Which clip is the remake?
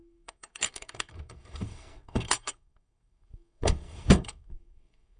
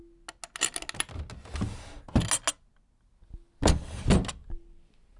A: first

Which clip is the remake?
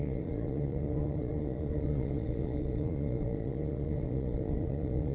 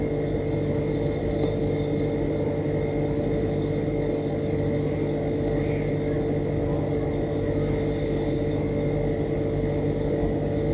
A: first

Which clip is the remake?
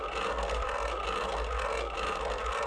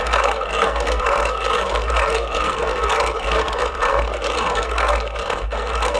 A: second